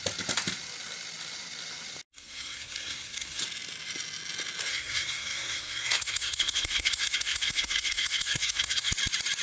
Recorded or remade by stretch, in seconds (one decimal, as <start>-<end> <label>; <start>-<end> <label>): 0.0-2.1 recorded; 2.1-3.4 remade; 3.4-4.7 recorded; 4.7-8.9 remade; 8.9-9.4 recorded